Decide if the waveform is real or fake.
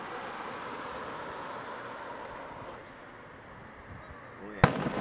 real